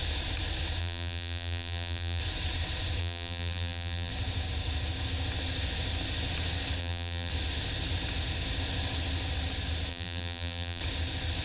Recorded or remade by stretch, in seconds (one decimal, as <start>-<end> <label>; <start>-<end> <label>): 0.0-0.8 recorded; 0.8-2.2 remade; 2.2-3.0 recorded; 3.0-4.1 remade; 4.1-6.8 recorded; 6.8-7.3 remade; 7.3-9.9 recorded; 9.9-10.8 remade; 10.8-11.4 recorded